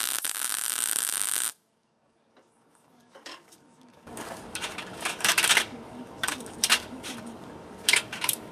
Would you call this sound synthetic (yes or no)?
yes